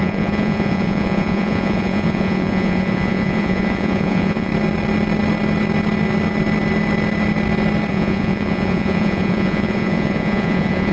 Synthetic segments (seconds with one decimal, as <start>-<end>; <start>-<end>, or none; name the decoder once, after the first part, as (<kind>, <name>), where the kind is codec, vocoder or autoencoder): 0.0-4.5 (vocoder, Vocos); 7.9-10.9